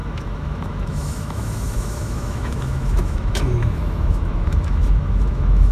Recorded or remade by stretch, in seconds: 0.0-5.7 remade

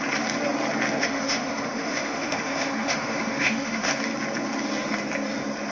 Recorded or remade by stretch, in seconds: 0.0-1.0 recorded; 1.0-3.9 remade; 3.9-5.7 recorded

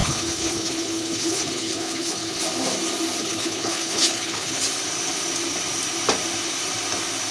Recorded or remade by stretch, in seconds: 0.0-2.4 remade; 2.4-3.2 recorded; 3.2-4.6 remade; 4.6-7.3 recorded

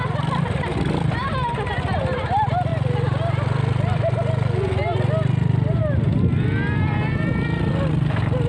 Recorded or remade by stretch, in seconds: 0.0-8.5 recorded

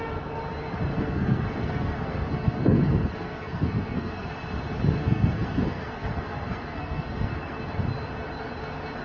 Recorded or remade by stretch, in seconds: 0.0-0.9 recorded; 0.9-4.3 remade; 4.3-5.0 recorded; 5.0-7.6 remade; 7.6-9.0 recorded